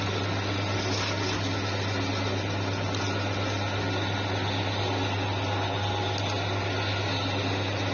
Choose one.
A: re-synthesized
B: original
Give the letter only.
B